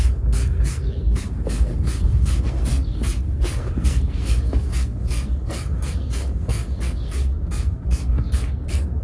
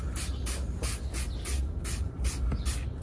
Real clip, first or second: second